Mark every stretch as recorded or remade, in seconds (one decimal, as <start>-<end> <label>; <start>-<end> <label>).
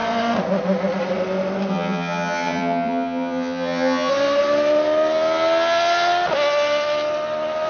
0.0-1.7 recorded; 1.7-4.1 remade; 4.1-7.7 recorded